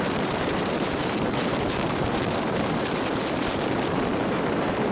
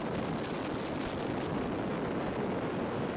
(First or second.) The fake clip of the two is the first